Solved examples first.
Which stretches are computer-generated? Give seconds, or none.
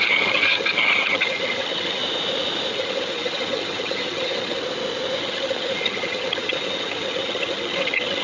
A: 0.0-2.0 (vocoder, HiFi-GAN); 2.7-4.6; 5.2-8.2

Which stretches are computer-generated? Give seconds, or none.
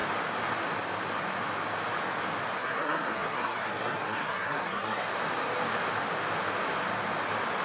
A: 2.6-5.1 (codec, SNAC)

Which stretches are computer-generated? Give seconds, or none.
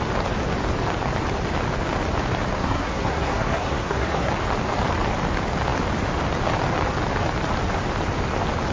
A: 2.6-4.3 (codec, SNAC)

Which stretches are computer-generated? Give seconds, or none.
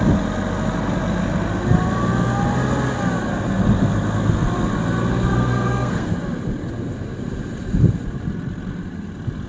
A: 5.3-6.1 (codec, SNAC)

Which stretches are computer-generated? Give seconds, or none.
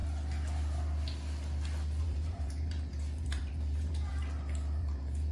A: 2.0-4.1 (vocoder, BigVGAN v2); 4.8-5.3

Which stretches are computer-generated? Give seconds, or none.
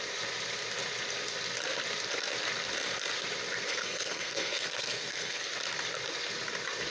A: 3.7-5.5 (codec, SNAC)